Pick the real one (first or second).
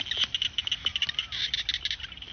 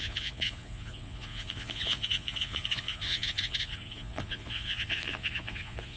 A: first